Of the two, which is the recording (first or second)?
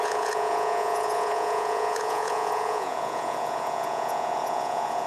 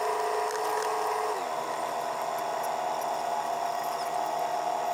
second